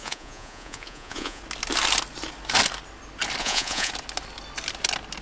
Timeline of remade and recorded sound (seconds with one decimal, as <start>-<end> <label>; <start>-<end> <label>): 0.0-1.4 remade; 1.4-3.4 recorded; 3.4-3.9 remade; 3.9-5.2 recorded